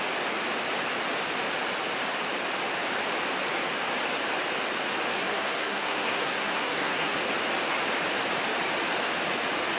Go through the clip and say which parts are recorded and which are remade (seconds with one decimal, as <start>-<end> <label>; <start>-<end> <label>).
0.0-5.1 recorded; 5.1-7.2 remade; 7.2-9.8 recorded